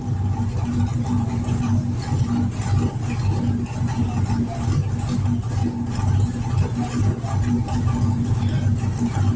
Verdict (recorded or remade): recorded